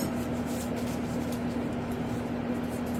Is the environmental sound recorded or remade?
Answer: recorded